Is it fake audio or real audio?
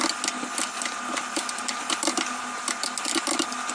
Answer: real